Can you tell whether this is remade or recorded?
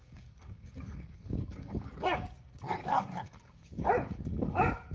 remade